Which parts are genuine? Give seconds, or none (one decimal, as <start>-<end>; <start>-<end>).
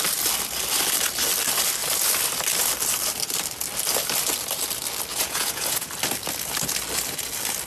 0.0-5.1; 5.9-7.7